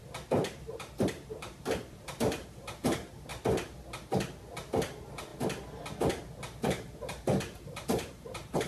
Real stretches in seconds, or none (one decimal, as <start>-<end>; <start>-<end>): 0.0-1.1; 3.3-4.8; 5.3-6.3